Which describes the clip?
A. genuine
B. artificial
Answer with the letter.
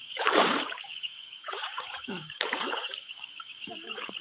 B